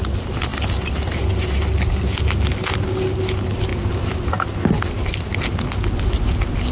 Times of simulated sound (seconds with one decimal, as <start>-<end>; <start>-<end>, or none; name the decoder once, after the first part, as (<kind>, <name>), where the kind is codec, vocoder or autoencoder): none